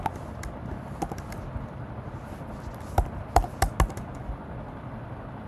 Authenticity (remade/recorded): recorded